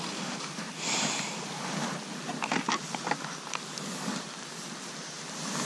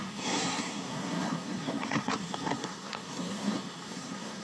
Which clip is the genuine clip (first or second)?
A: first